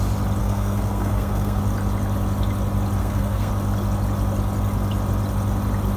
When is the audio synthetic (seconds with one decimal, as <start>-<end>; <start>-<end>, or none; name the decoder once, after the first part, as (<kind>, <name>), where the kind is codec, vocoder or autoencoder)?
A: 0.4-1.6 (codec, SNAC); 3.0-3.5